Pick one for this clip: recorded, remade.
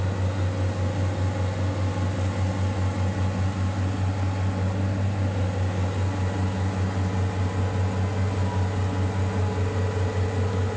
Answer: recorded